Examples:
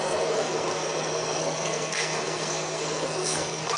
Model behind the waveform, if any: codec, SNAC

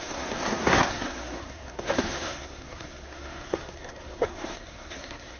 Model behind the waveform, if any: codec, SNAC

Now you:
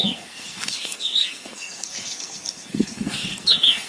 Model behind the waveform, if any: codec, SNAC